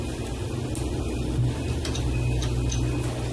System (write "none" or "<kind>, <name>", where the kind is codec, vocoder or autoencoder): none